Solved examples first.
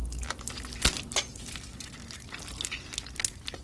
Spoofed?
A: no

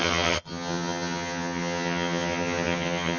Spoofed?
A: yes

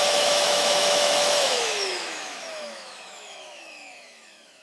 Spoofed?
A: yes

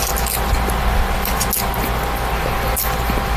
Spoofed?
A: no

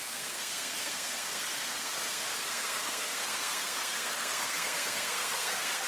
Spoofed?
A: yes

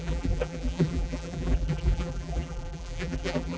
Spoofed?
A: yes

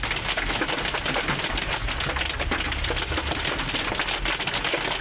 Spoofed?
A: no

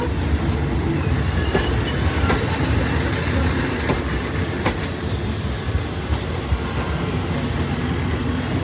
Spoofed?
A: no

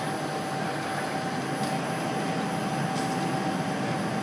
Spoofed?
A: no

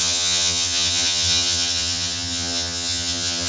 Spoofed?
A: yes